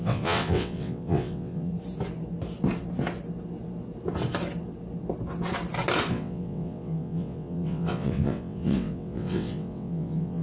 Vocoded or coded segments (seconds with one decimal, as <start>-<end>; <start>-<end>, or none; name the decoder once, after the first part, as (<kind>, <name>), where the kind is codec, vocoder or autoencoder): 0.0-1.7 (vocoder, WaveNeXt); 6.1-10.4